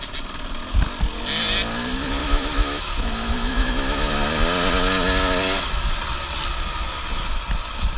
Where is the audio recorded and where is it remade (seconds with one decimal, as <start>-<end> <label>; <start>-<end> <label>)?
0.0-2.2 recorded; 2.2-4.1 remade; 4.1-8.0 recorded